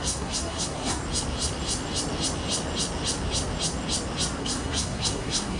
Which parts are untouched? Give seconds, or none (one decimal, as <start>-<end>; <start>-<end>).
1.0-4.4